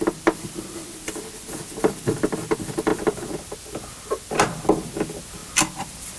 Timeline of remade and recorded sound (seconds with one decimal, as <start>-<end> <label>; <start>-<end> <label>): 0.0-6.2 recorded